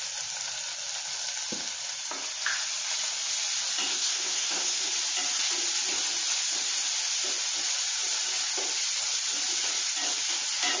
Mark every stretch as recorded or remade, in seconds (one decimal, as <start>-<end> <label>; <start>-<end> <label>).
0.0-3.9 recorded; 3.9-4.9 remade; 4.9-10.8 recorded